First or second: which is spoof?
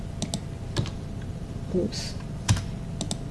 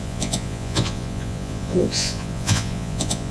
second